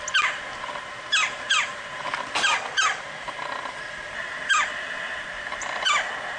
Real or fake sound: real